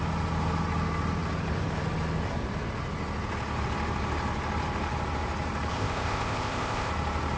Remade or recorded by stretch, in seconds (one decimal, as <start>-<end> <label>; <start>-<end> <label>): 0.0-5.7 recorded; 5.7-6.9 remade; 6.9-7.4 recorded